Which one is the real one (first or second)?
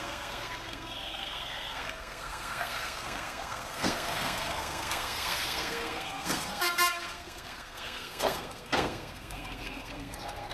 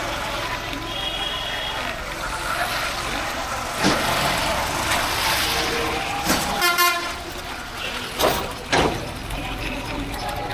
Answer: second